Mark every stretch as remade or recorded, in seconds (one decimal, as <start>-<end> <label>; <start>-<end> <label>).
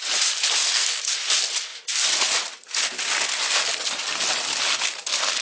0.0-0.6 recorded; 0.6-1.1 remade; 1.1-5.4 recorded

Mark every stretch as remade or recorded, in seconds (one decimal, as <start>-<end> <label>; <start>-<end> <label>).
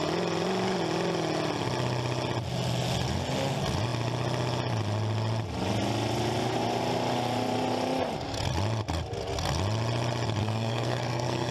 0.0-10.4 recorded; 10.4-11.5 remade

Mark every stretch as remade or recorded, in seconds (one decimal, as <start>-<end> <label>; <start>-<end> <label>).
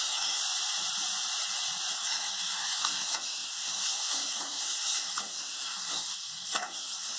0.0-0.4 remade; 0.4-1.9 recorded; 1.9-7.2 remade